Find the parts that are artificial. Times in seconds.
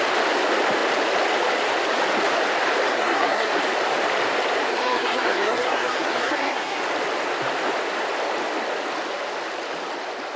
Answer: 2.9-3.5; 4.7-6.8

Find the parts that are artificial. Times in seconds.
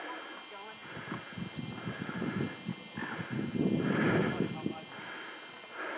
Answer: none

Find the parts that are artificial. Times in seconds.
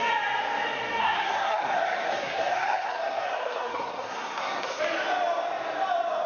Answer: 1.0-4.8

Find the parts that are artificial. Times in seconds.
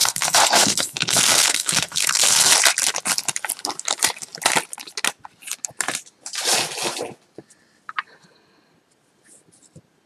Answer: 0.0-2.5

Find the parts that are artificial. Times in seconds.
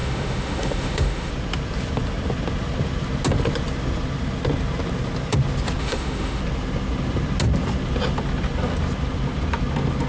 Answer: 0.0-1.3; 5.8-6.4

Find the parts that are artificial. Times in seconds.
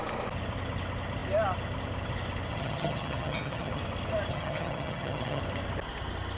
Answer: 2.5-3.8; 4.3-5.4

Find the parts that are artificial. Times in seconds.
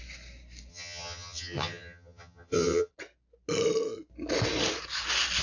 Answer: 0.7-2.9